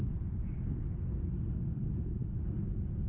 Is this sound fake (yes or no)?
no